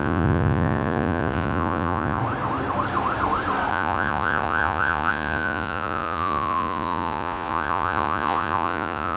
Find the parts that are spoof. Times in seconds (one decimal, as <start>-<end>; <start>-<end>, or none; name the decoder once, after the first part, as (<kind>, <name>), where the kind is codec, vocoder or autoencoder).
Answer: 0.0-2.2 (vocoder, Vocos); 3.7-9.2